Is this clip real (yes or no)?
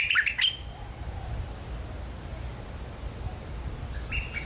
yes